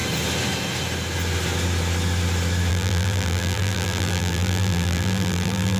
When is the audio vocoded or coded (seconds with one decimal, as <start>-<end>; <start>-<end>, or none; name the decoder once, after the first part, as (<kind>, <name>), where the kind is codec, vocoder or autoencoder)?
2.7-5.8 (vocoder, BigVGAN v2)